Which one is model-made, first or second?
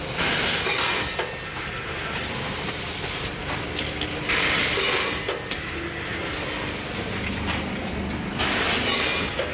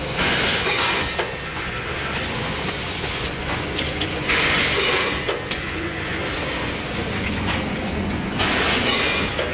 second